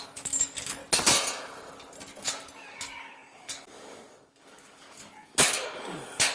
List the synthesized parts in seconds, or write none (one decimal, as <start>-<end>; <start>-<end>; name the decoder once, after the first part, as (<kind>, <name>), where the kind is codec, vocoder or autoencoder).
0.0-0.8 (codec, DAC); 2.2-6.3